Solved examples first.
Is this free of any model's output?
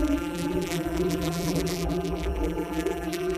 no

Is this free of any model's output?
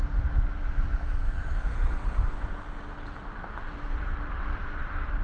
yes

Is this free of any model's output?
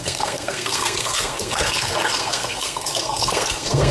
no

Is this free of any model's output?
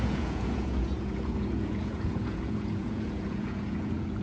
no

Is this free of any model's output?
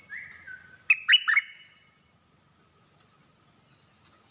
yes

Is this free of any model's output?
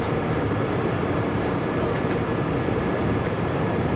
no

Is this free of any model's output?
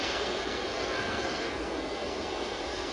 no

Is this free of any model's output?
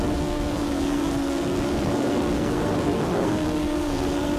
no